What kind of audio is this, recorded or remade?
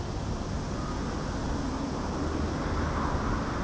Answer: recorded